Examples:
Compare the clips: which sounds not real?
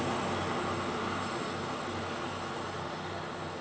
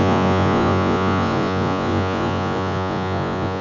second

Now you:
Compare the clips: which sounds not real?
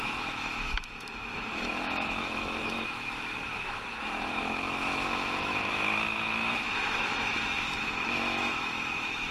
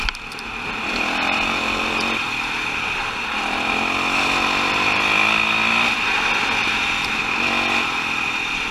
first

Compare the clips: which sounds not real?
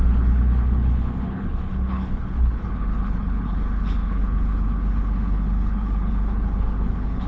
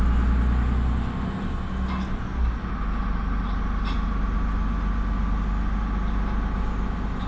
first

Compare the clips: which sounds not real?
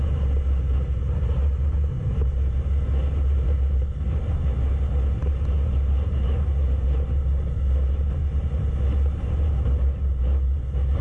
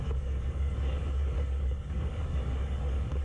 second